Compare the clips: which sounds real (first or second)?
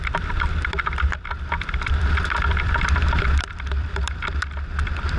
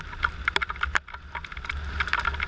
second